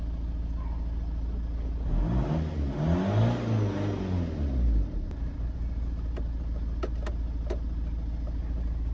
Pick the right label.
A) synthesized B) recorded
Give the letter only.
B